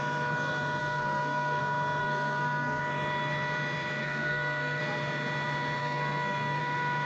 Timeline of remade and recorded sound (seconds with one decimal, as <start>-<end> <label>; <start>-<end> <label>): 0.0-0.8 recorded; 0.8-1.6 remade; 1.6-2.0 recorded; 2.0-2.8 remade; 2.8-4.0 recorded; 4.0-4.8 remade; 4.8-5.8 recorded; 5.8-6.6 remade; 6.6-7.1 recorded